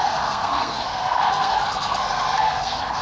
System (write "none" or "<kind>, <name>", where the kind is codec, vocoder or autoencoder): codec, SNAC